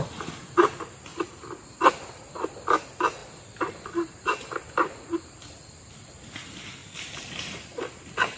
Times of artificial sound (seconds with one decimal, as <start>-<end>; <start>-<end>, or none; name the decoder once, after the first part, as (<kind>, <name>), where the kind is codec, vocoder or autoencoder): none